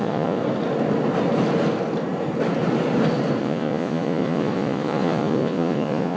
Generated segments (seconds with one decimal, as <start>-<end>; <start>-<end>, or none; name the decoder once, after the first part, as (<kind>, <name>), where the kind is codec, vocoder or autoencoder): 0.0-0.4 (vocoder, Vocos); 3.4-6.2